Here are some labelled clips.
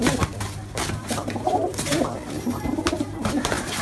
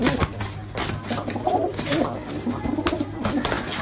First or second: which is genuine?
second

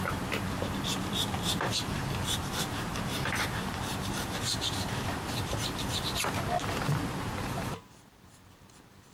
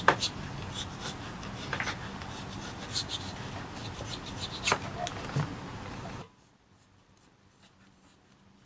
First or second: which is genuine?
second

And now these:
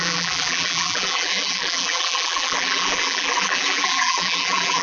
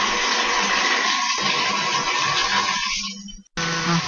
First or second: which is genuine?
second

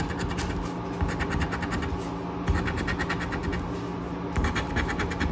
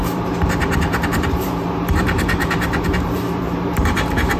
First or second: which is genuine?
first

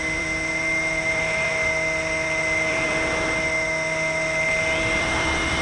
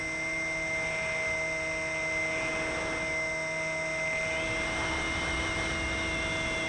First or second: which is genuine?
second